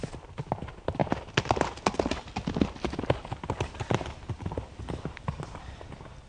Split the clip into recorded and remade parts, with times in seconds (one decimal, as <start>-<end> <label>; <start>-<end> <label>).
0.0-6.3 recorded